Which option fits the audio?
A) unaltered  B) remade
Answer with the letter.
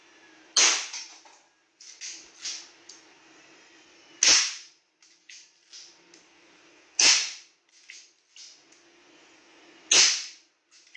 A